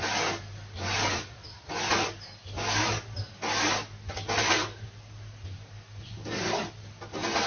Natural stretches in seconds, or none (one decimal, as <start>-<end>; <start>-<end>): 0.0-1.1; 1.7-7.5